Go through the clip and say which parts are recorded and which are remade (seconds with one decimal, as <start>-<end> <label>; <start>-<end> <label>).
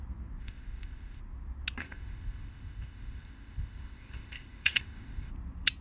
0.0-0.4 recorded; 0.4-1.2 remade; 1.2-1.8 recorded; 1.8-5.3 remade; 5.3-5.8 recorded